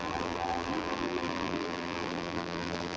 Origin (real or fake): fake